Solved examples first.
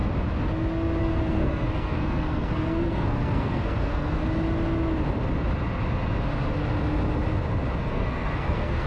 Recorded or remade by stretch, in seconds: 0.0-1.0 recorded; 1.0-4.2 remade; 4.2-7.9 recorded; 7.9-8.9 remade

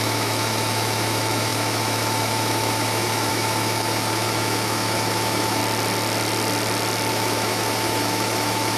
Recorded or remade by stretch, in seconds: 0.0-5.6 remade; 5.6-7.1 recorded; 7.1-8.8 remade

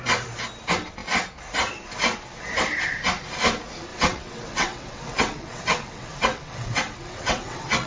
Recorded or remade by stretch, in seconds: 0.0-3.9 recorded; 3.9-7.9 remade